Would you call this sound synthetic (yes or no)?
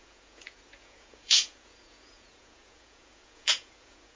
yes